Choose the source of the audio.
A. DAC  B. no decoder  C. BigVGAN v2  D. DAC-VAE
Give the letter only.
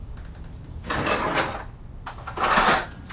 B